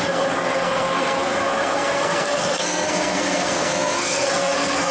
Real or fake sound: fake